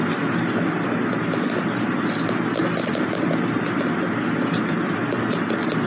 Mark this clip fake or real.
real